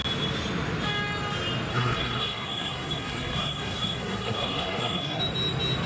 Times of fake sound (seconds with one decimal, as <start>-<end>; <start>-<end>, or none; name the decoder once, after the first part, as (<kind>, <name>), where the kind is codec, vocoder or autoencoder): 1.7-5.2 (codec, SNAC)